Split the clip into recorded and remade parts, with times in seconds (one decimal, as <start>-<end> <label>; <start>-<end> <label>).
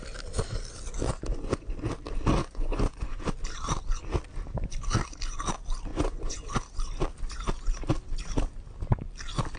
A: 0.0-1.3 recorded; 1.3-1.9 remade; 1.9-2.4 recorded; 2.4-3.2 remade; 3.2-5.9 recorded; 5.9-6.4 remade; 6.4-9.6 recorded